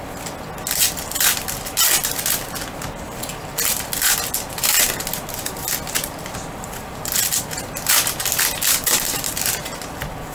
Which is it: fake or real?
real